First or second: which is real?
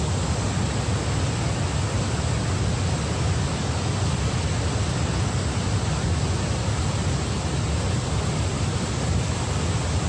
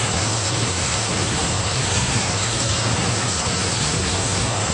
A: first